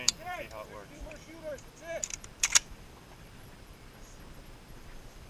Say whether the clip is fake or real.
fake